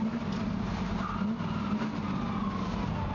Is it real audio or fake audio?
real